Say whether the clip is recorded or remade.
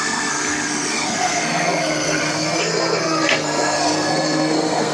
remade